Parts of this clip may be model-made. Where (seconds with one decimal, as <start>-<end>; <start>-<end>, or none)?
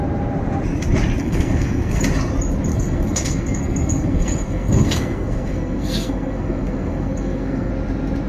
1.2-2.0; 2.7-7.7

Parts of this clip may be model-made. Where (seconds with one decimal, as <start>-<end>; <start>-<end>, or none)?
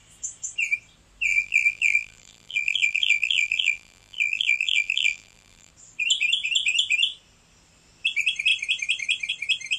1.3-5.7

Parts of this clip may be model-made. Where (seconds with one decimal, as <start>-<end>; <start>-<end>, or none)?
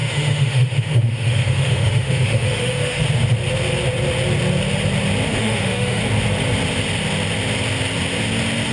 0.0-3.0; 5.3-6.0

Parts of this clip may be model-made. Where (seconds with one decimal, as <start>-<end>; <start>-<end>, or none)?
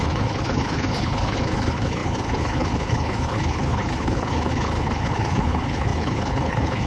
0.0-6.9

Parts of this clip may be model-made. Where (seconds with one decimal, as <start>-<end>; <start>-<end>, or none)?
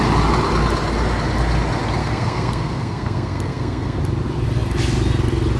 2.0-4.0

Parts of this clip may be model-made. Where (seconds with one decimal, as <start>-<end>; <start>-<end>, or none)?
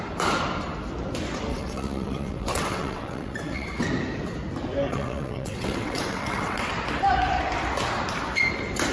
1.5-3.8; 4.9-6.7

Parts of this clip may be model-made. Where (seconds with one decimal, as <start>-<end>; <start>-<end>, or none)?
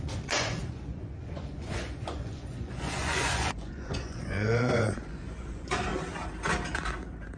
0.0-5.9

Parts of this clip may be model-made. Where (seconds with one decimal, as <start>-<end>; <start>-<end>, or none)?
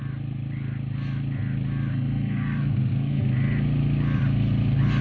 1.9-3.2